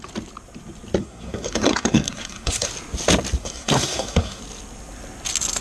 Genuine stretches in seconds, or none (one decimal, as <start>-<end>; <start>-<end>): 0.0-1.0; 2.7-3.4; 4.4-5.6

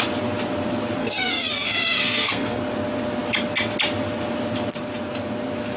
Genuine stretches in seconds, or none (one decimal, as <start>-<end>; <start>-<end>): 0.0-1.0; 2.6-5.8

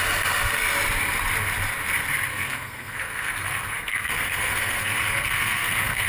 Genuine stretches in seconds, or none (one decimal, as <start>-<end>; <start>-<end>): 0.0-2.3

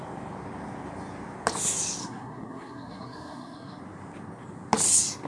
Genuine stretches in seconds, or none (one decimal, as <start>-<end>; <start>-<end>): 0.0-2.0; 3.8-5.3

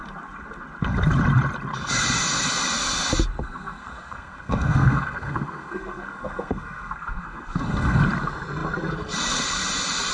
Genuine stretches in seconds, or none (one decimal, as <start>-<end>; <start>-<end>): 0.0-3.4; 8.0-10.1

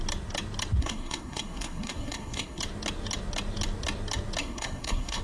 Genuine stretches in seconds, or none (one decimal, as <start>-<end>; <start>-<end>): 0.0-0.8; 2.6-4.4